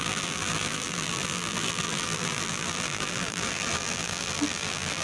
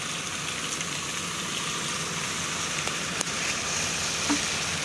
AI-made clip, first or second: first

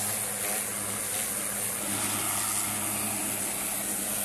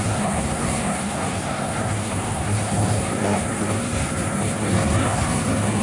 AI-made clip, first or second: second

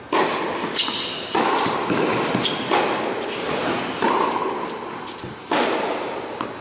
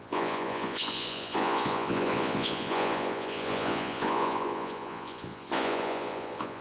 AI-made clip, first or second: second